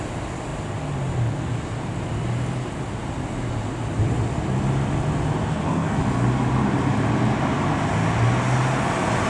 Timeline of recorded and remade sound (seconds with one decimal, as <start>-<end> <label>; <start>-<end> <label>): 0.0-5.5 recorded; 5.5-6.0 remade; 6.0-9.3 recorded